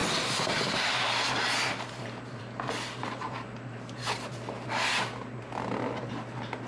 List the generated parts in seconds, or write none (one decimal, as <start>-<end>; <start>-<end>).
none